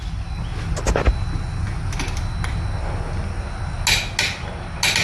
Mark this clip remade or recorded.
recorded